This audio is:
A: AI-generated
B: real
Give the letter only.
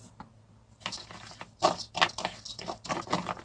B